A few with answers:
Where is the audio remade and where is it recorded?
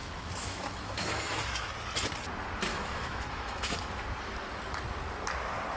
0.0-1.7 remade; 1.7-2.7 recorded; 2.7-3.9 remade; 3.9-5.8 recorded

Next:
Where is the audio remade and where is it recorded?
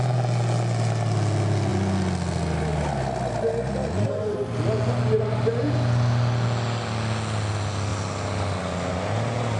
0.0-9.6 recorded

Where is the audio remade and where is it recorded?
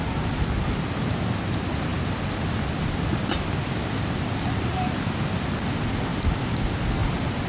0.0-7.5 remade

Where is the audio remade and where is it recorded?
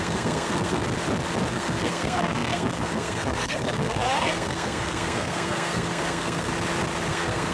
0.0-0.8 remade; 0.8-1.5 recorded; 1.5-6.5 remade; 6.5-7.1 recorded; 7.1-7.5 remade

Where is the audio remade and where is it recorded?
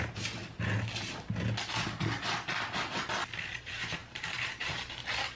0.0-0.4 remade; 0.4-3.6 recorded; 3.6-5.4 remade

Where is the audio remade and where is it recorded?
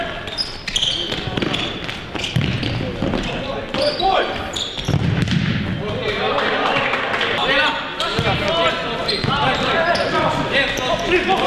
0.0-9.0 recorded; 9.0-9.7 remade; 9.7-11.5 recorded